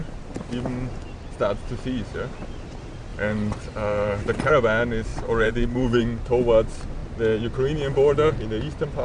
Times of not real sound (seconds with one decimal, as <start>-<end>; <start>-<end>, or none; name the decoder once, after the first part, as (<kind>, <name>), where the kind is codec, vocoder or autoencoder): 3.1-4.5 (vocoder, BigVGAN v2); 5.1-6.0